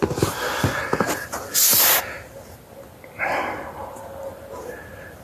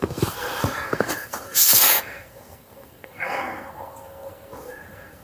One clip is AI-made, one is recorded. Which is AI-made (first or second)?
second